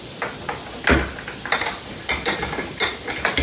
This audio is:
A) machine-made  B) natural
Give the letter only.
B